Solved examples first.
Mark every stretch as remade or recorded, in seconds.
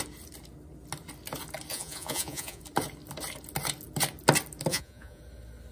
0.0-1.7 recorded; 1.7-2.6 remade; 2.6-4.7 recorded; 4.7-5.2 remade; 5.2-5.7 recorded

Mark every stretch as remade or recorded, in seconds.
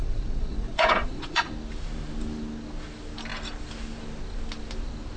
0.0-1.5 remade; 1.5-5.2 recorded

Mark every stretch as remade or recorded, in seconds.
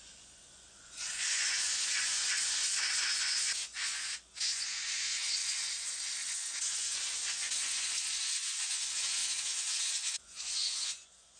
0.0-9.2 remade; 9.2-9.8 recorded; 9.8-11.4 remade